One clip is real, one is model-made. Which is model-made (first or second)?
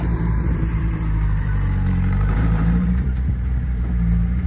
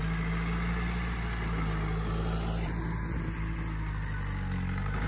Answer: first